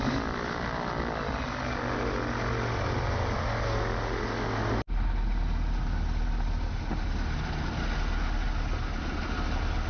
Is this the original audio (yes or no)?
yes